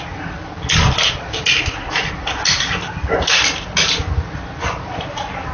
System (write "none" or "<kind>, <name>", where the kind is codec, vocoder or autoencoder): none